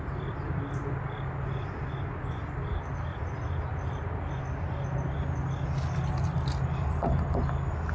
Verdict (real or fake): real